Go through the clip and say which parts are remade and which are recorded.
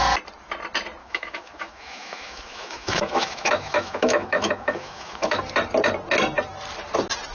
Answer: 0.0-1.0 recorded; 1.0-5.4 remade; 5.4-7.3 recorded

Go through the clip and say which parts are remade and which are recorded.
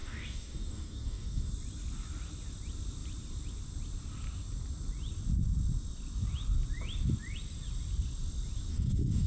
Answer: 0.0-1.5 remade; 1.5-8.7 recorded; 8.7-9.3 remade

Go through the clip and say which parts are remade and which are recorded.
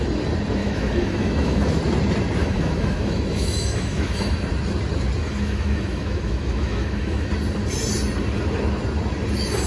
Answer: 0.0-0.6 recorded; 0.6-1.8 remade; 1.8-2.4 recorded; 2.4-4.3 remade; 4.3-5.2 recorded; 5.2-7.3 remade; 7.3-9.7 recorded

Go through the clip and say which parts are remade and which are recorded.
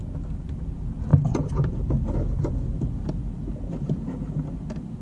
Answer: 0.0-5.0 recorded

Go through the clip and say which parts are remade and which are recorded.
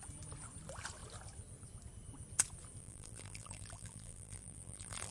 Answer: 0.0-2.8 recorded; 2.8-5.1 remade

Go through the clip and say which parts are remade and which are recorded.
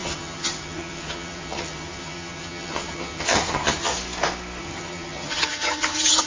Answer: 0.0-3.9 remade; 3.9-4.6 recorded; 4.6-6.3 remade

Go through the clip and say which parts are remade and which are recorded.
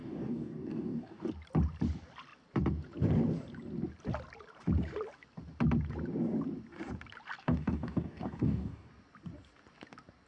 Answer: 0.0-1.3 remade; 1.3-7.4 recorded; 7.4-8.9 remade; 8.9-10.3 recorded